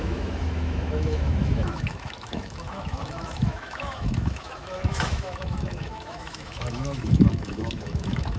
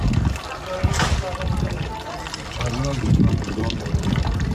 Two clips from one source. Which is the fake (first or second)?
first